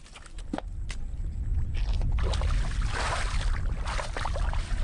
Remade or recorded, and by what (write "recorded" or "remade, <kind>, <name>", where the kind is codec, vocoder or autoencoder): recorded